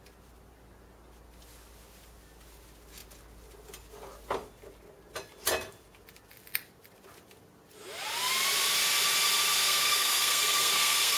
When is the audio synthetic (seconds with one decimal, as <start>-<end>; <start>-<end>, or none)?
9.5-11.2